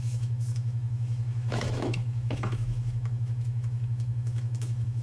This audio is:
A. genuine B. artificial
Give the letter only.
B